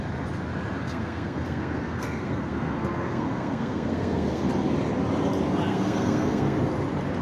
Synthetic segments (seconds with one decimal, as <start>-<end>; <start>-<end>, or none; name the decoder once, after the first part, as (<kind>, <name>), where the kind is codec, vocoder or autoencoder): 0.8-4.5 (codec, SNAC); 5.7-6.6